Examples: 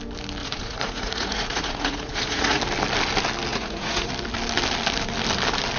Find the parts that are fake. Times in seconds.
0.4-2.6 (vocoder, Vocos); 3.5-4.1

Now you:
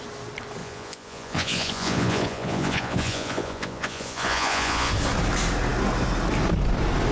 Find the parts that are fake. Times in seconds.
0.6-4.9 (vocoder, Vocos)

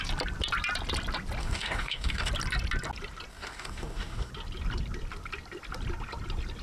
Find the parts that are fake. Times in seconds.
1.4-2.3 (codec, DAC); 3.3-4.3

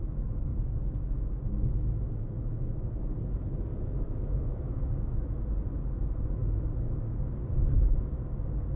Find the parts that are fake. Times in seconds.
0.5-2.9 (autoencoder, DAC-VAE); 3.7-5.4; 6.4-8.3

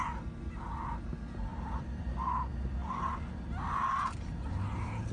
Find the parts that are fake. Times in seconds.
1.5-2.1 (vocoder, BigVGAN v2)